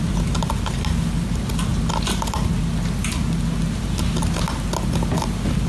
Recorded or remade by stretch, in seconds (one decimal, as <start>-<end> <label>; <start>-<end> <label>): 0.0-5.7 recorded